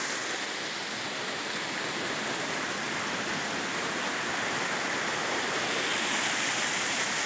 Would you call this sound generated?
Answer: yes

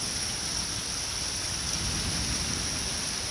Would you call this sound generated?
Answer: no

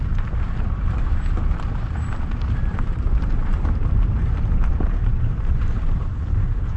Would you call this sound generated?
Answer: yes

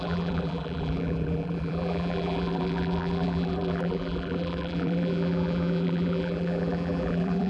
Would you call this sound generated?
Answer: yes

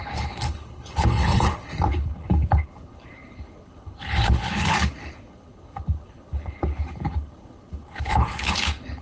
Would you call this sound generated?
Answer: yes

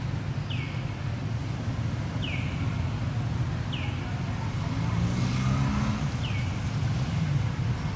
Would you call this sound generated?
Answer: no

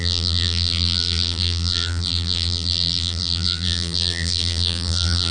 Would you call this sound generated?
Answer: yes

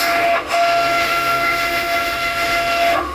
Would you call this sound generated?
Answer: yes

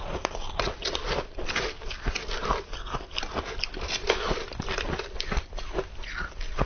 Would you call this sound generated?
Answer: no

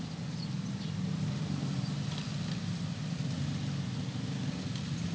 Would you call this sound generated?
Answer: no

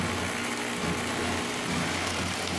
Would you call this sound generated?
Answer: no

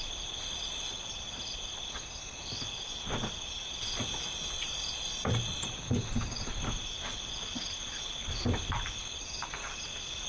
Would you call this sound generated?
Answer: no